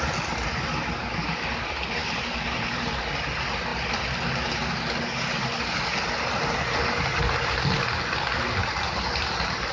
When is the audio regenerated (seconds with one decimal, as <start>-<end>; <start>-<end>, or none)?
2.0-3.0; 8.6-9.1